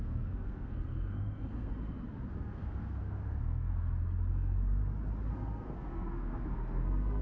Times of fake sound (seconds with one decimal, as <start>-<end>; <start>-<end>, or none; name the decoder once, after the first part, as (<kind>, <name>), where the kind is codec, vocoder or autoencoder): 0.0-1.7 (codec, SNAC); 2.3-3.7; 4.3-4.8; 5.3-7.2